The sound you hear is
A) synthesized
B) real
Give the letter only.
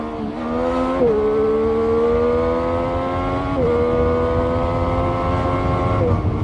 B